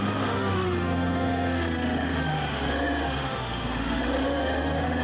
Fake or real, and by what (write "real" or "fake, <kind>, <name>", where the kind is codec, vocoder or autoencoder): fake, autoencoder, DAC-VAE